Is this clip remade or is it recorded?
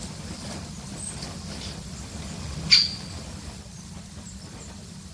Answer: recorded